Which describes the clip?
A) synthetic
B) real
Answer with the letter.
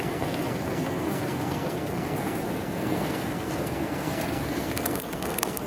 A